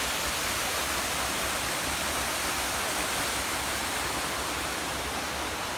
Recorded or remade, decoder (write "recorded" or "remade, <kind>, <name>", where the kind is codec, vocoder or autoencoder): recorded